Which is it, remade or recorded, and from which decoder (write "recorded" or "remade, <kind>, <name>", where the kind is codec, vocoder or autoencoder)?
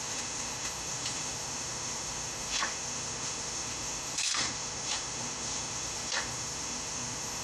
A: remade, autoencoder, DAC-VAE